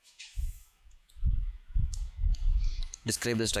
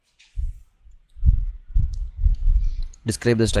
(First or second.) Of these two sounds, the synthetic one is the first